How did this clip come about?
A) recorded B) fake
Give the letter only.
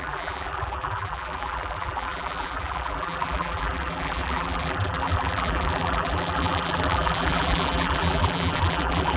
B